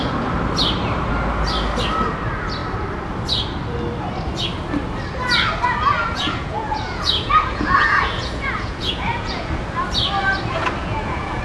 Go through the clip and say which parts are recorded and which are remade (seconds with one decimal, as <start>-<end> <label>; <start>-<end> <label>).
0.0-6.0 recorded; 6.0-9.5 remade; 9.5-10.8 recorded; 10.8-11.4 remade